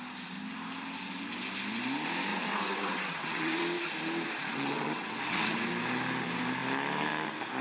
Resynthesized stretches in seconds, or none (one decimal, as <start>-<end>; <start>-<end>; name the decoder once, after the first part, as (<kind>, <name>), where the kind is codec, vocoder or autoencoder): 2.3-3.6 (vocoder, WaveNeXt); 4.5-5.7